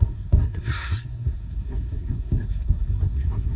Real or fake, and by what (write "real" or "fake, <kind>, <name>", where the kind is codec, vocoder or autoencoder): fake, codec, SNAC